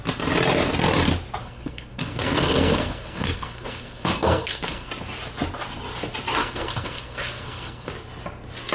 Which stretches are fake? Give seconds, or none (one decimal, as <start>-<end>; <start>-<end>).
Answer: 1.4-4.9; 6.4-7.9